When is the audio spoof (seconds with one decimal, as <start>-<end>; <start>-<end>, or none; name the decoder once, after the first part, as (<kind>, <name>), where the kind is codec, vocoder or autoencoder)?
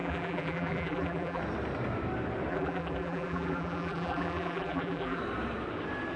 0.0-1.4 (vocoder, BigVGAN v2); 2.5-5.2